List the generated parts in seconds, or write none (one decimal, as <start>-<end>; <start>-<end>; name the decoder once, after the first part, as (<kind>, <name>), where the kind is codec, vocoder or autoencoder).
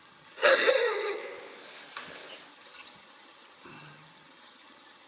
0.0-1.2 (vocoder, HiFi-GAN); 2.5-5.1